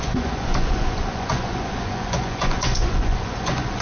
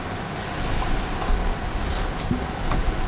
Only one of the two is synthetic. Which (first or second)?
first